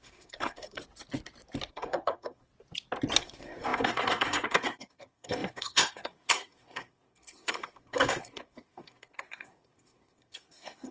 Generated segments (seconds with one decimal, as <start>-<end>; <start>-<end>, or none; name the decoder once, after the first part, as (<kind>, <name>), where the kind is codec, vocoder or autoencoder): 0.0-0.8 (codec, SNAC); 1.7-2.5; 3.2-10.9

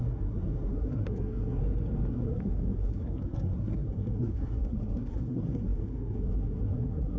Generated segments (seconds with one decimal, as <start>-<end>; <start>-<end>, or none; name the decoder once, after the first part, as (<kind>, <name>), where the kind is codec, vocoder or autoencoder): 0.0-1.6 (codec, SNAC); 2.1-7.2

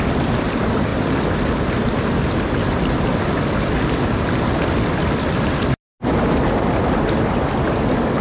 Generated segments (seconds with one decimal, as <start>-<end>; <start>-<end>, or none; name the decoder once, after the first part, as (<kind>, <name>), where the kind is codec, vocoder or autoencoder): none

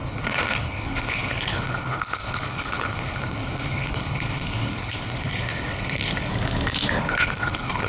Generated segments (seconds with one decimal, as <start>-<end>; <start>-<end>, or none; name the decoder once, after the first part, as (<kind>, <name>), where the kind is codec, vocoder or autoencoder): 0.0-6.3 (codec, HILCodec); 7.0-7.9

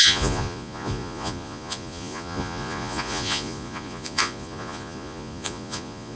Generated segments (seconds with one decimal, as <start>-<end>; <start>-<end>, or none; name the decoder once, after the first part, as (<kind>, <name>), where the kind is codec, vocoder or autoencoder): 0.0-6.2 (vocoder, Vocos)